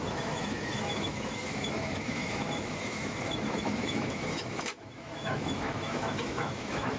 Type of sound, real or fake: fake